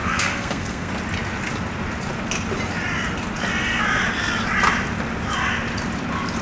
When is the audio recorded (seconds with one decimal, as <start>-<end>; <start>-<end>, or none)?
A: 0.9-6.4